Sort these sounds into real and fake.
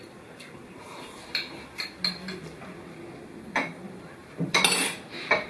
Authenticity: real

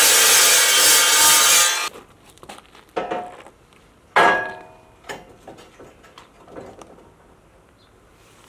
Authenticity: real